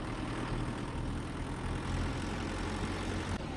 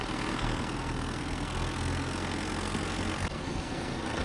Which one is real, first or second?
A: first